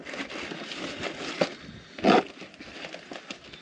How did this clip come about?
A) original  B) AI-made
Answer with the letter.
A